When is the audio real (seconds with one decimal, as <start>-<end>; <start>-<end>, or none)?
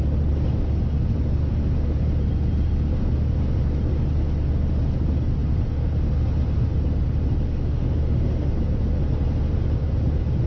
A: 0.0-7.5; 8.5-10.5